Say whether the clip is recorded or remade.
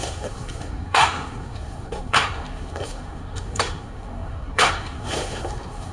remade